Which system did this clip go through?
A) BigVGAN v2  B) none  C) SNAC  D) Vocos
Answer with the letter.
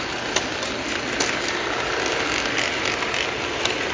B